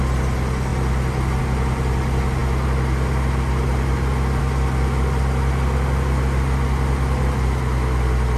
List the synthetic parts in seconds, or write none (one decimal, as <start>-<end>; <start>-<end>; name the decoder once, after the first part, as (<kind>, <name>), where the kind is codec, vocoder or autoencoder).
none

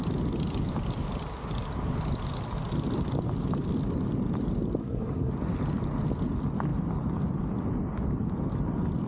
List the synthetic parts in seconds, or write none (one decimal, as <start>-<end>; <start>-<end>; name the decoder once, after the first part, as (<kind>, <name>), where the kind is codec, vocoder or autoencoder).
4.8-5.3 (codec, SNAC)

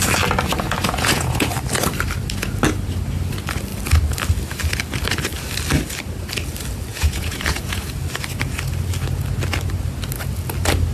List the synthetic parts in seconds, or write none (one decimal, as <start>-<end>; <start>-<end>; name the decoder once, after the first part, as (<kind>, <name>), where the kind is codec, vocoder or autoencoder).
0.8-1.5 (vocoder, Vocos); 6.9-7.9

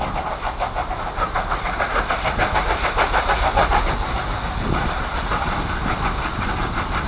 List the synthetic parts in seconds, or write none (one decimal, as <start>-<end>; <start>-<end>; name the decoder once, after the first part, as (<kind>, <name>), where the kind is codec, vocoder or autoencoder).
none

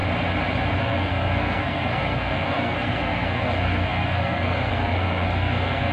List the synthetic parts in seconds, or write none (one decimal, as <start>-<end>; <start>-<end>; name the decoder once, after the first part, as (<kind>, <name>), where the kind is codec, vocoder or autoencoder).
0.8-5.9 (codec, SNAC)

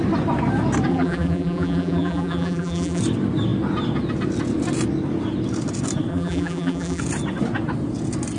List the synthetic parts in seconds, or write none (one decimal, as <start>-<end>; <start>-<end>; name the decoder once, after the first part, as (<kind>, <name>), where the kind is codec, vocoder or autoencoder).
0.9-3.0 (vocoder, BigVGAN v2); 6.1-7.0

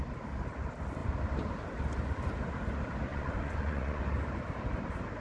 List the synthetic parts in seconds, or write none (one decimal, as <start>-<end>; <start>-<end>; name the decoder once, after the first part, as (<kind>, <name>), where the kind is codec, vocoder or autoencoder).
3.1-4.0 (vocoder, Vocos)